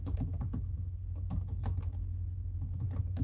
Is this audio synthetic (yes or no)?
no